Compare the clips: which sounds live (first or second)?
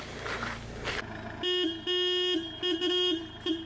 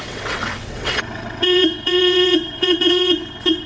first